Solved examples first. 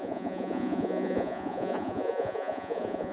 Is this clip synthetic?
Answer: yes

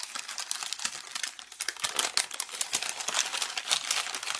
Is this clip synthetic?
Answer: no